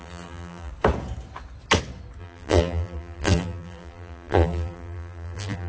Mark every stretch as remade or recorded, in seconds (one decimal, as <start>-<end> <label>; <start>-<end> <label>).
0.0-0.7 remade; 0.7-2.2 recorded; 2.2-5.7 remade